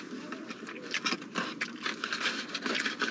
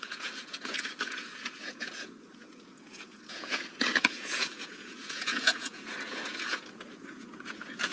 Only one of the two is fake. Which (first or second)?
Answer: second